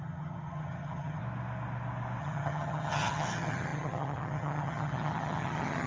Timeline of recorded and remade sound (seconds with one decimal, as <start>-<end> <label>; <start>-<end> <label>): 0.0-1.2 remade; 1.2-2.2 recorded; 2.2-5.9 remade